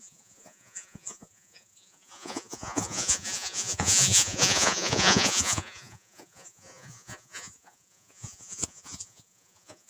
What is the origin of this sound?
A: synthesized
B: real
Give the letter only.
A